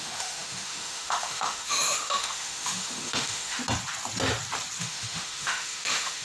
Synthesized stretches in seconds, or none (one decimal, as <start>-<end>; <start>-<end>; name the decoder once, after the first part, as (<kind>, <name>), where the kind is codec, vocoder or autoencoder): 0.0-3.6 (autoencoder, DAC-VAE); 4.8-6.2